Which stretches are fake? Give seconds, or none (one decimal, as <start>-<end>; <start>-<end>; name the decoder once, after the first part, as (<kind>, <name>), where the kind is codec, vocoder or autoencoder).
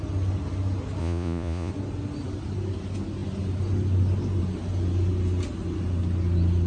1.0-1.7 (vocoder, Vocos)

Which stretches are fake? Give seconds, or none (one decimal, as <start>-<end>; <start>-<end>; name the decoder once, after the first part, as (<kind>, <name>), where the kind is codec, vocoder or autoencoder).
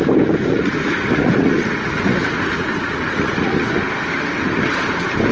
0.5-3.7 (vocoder, Vocos)